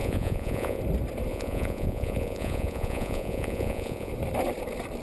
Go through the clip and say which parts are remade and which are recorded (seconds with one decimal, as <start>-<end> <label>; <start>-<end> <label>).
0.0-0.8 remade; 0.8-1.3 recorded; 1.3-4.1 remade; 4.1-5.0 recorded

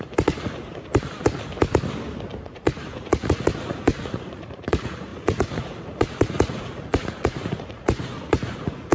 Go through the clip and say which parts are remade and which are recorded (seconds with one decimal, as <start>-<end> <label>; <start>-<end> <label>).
0.0-1.5 remade; 1.5-2.4 recorded; 2.4-8.9 remade

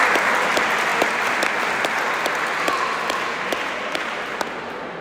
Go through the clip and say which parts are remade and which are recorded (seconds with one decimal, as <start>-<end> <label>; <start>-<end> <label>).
0.0-5.0 recorded

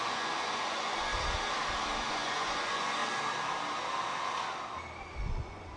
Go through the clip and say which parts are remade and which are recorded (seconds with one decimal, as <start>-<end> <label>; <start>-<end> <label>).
0.0-1.1 remade; 1.1-2.1 recorded; 2.1-3.0 remade; 3.0-5.2 recorded; 5.2-5.8 remade

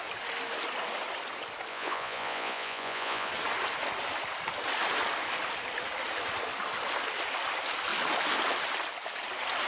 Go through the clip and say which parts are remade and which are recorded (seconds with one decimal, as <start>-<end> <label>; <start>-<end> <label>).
0.0-1.7 recorded; 1.7-3.3 remade; 3.3-9.7 recorded

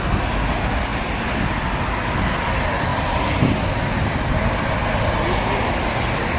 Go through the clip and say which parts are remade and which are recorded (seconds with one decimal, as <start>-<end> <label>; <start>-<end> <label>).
0.0-6.4 recorded

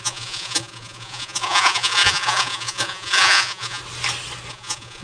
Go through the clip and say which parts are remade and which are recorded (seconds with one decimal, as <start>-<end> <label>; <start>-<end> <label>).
0.0-3.8 remade; 3.8-4.5 recorded; 4.5-5.0 remade

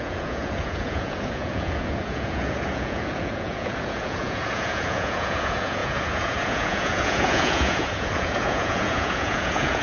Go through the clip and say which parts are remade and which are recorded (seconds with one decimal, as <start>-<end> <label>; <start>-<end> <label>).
0.0-9.8 remade